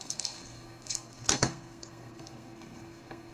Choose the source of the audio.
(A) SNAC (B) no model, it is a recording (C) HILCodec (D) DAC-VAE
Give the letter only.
A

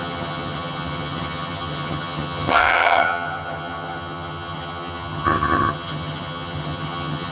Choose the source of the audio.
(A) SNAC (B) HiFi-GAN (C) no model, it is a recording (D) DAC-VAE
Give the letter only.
B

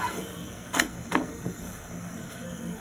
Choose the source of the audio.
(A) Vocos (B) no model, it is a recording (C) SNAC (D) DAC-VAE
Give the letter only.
C